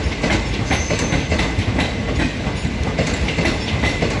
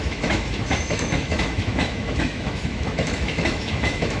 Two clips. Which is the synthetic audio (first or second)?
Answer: second